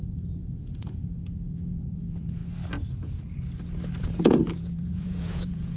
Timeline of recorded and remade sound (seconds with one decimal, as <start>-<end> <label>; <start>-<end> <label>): 0.0-2.4 remade; 2.4-4.0 recorded; 4.0-5.8 remade